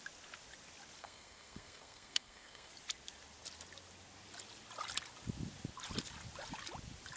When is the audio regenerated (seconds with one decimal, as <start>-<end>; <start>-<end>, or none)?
1.0-2.7